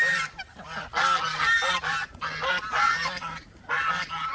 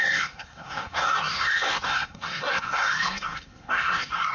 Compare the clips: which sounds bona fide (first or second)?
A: first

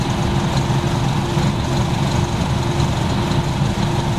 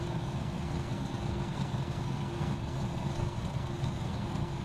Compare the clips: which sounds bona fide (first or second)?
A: first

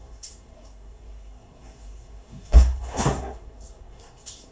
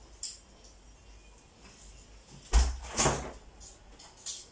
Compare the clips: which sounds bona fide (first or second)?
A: second